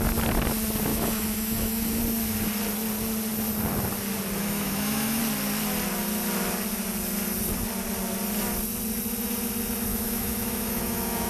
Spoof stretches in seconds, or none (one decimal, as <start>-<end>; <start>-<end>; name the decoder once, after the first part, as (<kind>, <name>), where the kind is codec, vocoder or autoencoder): 0.9-2.0 (autoencoder, DAC-VAE); 4.4-5.2; 9.9-11.3